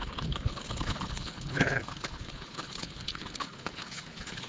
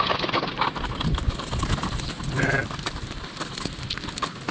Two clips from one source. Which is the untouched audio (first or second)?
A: second